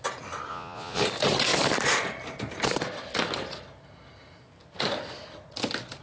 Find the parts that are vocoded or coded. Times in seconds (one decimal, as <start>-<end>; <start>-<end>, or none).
0.5-1.0